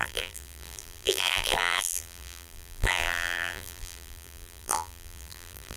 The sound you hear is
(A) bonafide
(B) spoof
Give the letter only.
B